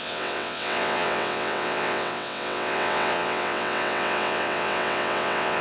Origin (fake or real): fake